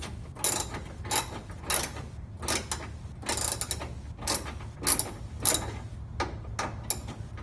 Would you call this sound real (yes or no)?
yes